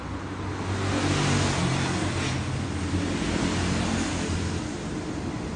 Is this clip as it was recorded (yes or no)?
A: yes